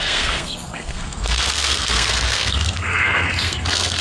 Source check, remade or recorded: remade